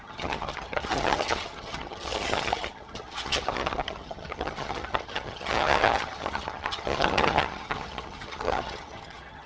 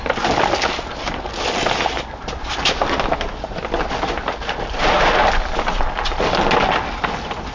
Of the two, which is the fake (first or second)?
first